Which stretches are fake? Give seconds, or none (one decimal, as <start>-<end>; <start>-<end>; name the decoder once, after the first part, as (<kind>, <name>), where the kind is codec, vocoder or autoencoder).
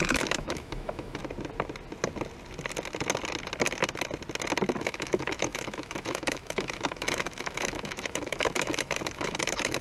0.0-1.2 (autoencoder, DAC-VAE); 4.8-9.8